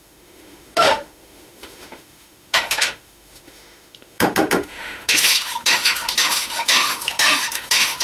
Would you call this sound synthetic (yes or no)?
yes